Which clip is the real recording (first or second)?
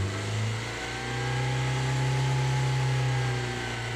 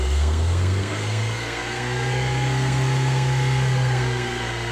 first